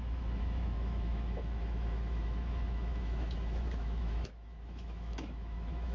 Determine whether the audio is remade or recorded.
remade